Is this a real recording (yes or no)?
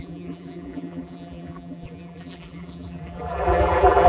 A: no